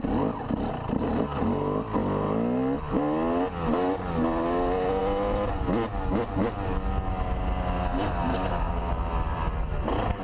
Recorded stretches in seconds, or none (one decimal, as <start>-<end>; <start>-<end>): 0.0-8.3; 8.9-10.2